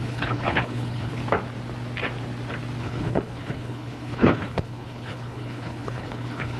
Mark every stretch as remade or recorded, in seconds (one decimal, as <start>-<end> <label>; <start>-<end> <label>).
0.0-1.2 remade; 1.2-2.8 recorded; 2.8-6.6 remade